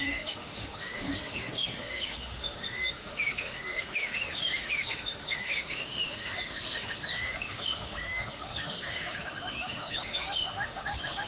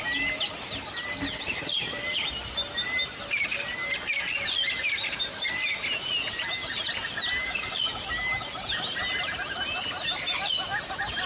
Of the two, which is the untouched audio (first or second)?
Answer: second